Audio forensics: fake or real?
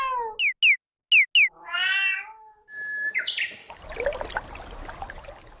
real